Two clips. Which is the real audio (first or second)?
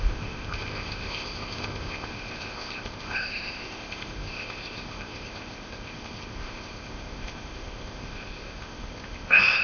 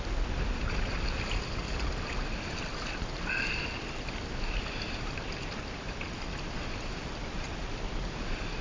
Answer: second